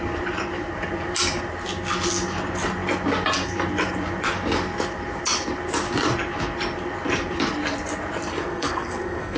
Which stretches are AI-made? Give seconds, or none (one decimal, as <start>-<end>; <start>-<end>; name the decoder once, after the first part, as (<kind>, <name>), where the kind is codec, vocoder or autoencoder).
8.3-9.4 (codec, SNAC)